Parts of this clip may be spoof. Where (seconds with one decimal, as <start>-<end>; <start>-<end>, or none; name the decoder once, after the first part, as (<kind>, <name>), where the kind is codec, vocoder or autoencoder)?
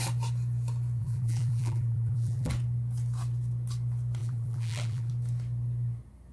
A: 1.0-2.5 (vocoder, BigVGAN v2); 4.2-5.1